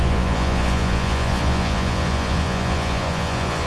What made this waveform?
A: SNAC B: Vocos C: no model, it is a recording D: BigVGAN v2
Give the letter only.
B